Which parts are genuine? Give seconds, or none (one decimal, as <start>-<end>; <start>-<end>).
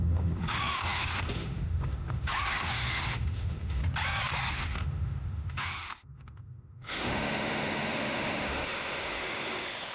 3.8-4.5